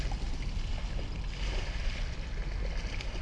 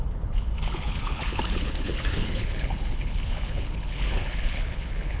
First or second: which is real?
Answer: first